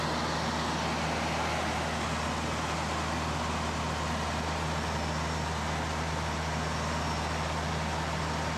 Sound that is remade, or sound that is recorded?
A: recorded